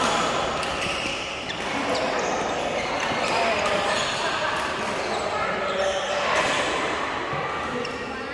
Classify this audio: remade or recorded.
recorded